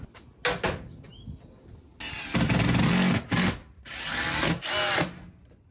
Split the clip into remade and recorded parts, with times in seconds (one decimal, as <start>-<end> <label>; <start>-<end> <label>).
0.0-5.7 recorded